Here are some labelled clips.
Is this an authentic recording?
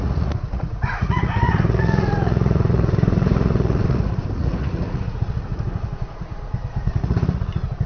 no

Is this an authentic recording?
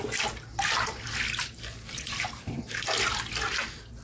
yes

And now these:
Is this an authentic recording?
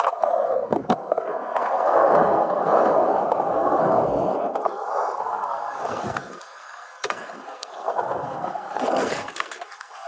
no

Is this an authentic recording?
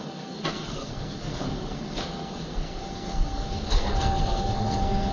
no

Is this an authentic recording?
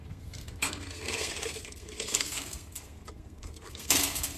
no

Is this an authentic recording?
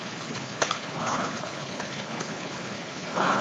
no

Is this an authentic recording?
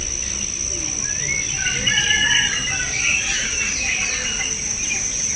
yes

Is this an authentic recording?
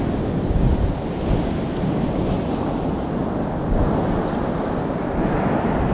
yes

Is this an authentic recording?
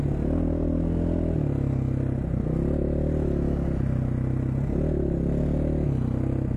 yes